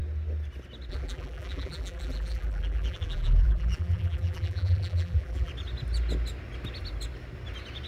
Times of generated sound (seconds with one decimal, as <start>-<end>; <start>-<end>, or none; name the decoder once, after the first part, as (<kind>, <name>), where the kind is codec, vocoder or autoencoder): 0.9-5.5 (vocoder, BigVGAN v2)